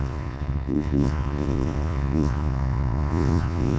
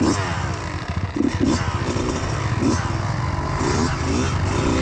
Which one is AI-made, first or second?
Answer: first